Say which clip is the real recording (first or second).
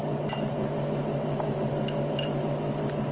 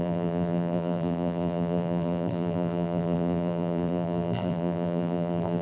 first